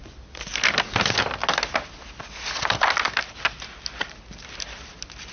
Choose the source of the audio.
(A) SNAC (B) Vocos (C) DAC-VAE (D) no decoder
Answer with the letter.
D